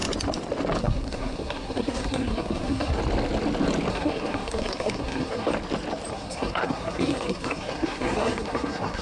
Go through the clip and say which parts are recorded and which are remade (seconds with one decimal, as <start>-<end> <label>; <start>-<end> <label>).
0.0-0.8 recorded; 0.8-3.0 remade; 3.0-3.9 recorded; 3.9-5.5 remade; 5.5-6.1 recorded; 6.1-9.0 remade